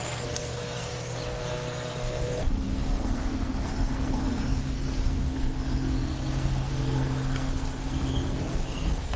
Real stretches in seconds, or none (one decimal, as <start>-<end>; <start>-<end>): 0.9-1.4